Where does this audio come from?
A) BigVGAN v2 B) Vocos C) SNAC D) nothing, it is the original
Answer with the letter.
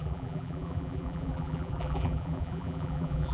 A